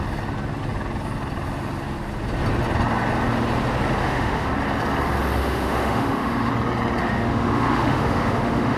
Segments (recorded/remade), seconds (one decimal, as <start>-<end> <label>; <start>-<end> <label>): 0.0-4.0 recorded; 4.0-4.5 remade; 4.5-5.4 recorded; 5.4-6.5 remade; 6.5-7.0 recorded; 7.0-8.8 remade